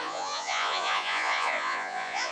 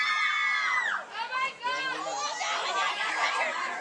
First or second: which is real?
second